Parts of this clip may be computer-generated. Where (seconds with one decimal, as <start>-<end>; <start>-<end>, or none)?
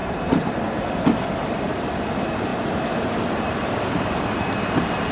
0.0-1.0; 2.5-4.2